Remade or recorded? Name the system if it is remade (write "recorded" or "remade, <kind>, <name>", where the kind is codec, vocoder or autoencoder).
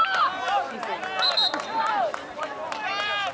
recorded